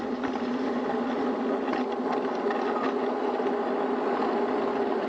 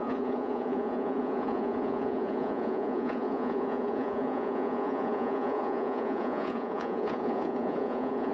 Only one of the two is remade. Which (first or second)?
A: second